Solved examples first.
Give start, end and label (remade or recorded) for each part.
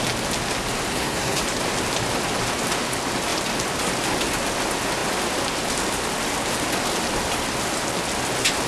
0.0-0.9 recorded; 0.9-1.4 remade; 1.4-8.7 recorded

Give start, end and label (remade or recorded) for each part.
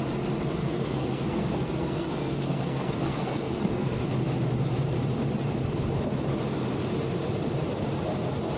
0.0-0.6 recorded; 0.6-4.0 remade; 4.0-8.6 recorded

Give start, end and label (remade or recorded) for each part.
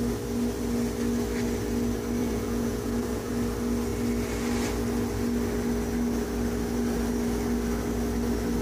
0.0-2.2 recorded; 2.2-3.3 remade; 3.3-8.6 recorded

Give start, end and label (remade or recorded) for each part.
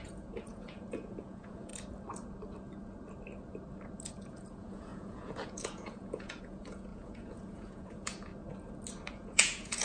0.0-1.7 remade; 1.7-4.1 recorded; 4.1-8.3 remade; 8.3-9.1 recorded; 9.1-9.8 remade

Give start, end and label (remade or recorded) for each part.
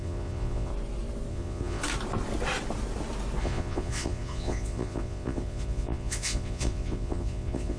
0.0-0.7 remade; 0.7-1.3 recorded; 1.3-1.8 remade; 1.8-3.4 recorded; 3.4-7.8 remade